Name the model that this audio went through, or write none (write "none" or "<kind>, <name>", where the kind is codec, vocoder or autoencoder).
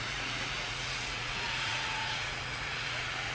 vocoder, Vocos